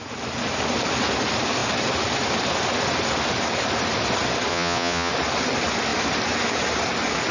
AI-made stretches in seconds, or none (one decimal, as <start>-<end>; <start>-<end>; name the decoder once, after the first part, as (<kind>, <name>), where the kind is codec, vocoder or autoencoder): 4.5-5.1 (vocoder, Vocos)